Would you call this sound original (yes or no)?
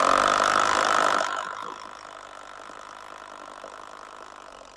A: yes